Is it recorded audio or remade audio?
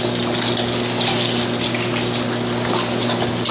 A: recorded